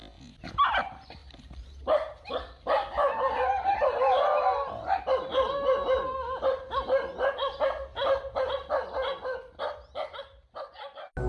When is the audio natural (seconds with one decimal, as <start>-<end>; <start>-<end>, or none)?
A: 0.0-11.3